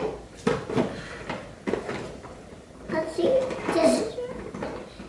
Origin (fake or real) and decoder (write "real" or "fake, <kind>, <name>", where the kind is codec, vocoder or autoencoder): fake, vocoder, BigVGAN v2